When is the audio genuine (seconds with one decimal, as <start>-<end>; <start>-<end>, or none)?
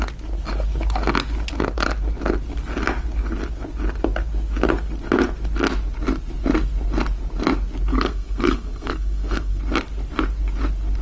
0.0-7.9; 9.6-11.0